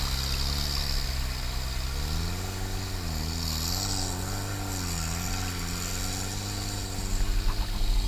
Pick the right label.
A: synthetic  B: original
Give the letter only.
B